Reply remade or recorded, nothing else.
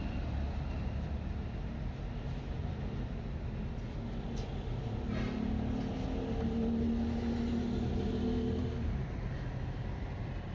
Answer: recorded